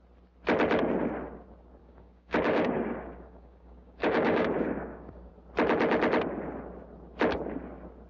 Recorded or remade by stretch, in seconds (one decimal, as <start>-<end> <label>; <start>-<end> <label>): 0.0-1.8 recorded; 1.8-5.3 remade; 5.3-8.1 recorded